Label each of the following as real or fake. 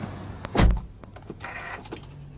real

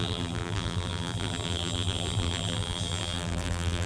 fake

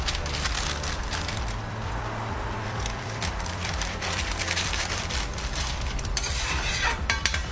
fake